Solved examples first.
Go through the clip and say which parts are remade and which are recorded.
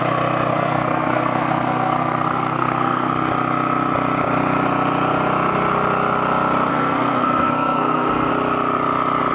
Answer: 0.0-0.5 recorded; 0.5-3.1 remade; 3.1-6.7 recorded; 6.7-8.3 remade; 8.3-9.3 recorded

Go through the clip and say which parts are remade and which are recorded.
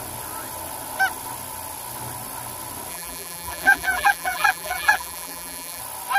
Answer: 0.0-2.9 recorded; 2.9-5.8 remade; 5.8-6.2 recorded